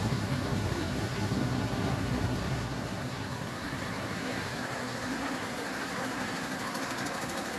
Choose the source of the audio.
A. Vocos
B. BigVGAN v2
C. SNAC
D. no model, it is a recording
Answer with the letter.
C